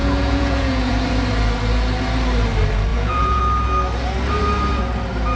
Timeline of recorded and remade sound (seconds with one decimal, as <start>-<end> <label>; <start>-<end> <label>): 0.0-0.9 remade; 0.9-2.9 recorded; 2.9-3.4 remade; 3.4-5.4 recorded